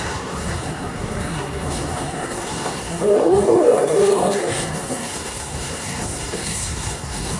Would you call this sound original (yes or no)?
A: no